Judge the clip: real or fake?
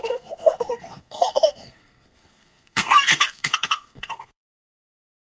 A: fake